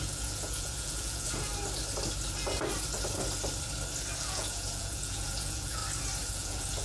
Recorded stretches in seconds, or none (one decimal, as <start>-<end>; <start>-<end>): 1.5-4.2; 5.8-6.3